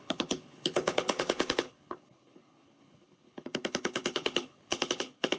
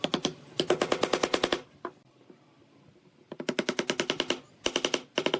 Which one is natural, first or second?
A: second